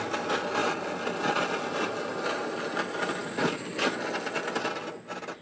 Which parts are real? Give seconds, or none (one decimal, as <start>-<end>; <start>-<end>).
0.0-5.4